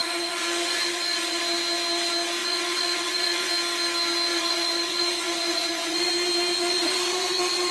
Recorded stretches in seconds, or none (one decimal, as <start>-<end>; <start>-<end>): 1.4-2.4; 3.5-4.3; 6.1-6.5

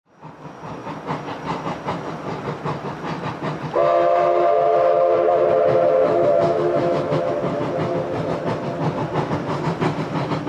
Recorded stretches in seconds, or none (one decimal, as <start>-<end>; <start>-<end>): 0.0-6.0; 7.2-10.5